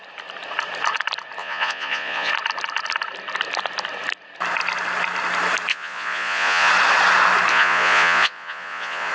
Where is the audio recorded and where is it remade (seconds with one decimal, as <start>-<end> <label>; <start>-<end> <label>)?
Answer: 0.0-1.4 recorded; 1.4-2.3 remade; 2.3-5.7 recorded; 5.7-6.7 remade; 6.7-7.5 recorded; 7.5-9.1 remade